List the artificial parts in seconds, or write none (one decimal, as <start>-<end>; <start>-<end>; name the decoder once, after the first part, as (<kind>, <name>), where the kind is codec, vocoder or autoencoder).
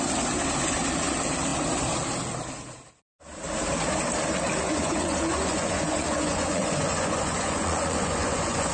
4.7-8.7 (vocoder, Vocos)